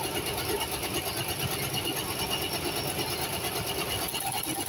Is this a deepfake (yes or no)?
no